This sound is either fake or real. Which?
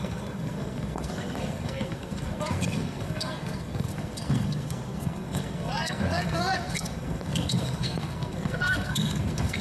fake